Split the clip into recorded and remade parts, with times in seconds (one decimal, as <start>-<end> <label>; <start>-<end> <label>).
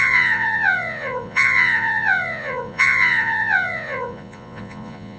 0.0-5.2 remade